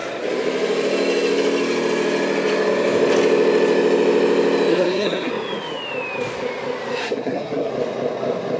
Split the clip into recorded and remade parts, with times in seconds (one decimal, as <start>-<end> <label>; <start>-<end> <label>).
0.0-4.7 recorded; 4.7-5.3 remade; 5.3-7.0 recorded; 7.0-7.7 remade; 7.7-8.6 recorded